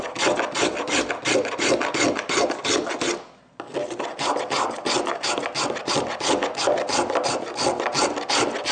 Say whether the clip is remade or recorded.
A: recorded